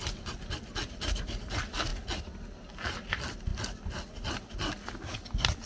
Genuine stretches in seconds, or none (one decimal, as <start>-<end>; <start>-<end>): 0.0-5.7